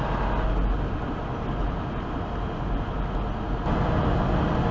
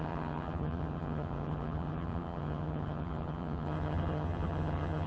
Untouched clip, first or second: first